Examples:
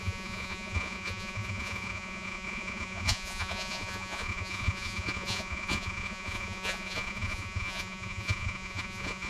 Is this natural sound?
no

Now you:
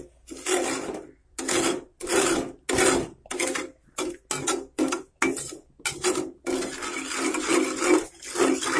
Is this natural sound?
yes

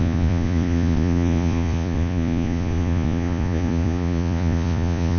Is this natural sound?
no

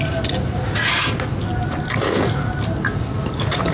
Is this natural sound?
yes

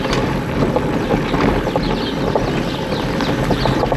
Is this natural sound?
yes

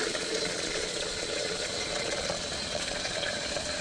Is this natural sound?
no